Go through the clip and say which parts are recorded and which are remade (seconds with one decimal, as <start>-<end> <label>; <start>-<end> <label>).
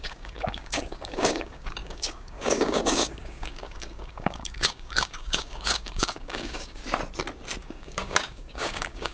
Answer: 0.0-6.8 remade; 6.8-7.6 recorded; 7.6-9.1 remade